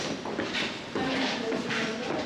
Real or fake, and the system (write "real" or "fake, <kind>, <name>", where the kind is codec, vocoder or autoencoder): real